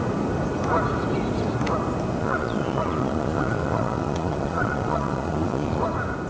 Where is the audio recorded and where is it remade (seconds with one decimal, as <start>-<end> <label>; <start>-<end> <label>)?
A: 0.0-2.2 recorded; 2.2-5.8 remade; 5.8-6.3 recorded